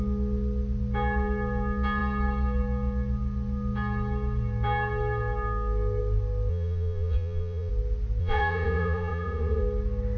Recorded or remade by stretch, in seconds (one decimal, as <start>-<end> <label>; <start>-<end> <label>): 0.0-6.5 recorded; 6.5-7.7 remade; 7.7-8.2 recorded; 8.2-9.6 remade; 9.6-10.2 recorded